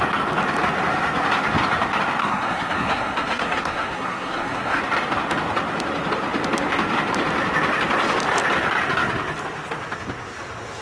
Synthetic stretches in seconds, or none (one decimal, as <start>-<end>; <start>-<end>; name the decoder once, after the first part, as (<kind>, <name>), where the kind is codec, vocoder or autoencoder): 2.2-4.8 (codec, SNAC)